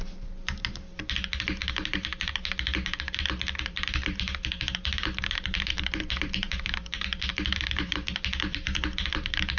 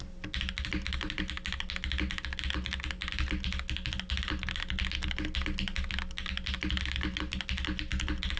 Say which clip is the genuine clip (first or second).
second